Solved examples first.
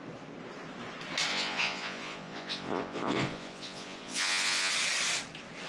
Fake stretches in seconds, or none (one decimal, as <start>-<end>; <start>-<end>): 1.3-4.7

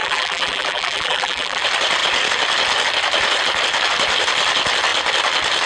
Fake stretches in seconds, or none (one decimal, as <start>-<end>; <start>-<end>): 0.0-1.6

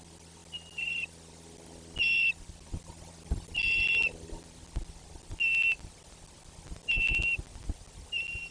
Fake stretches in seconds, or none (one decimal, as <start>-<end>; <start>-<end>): none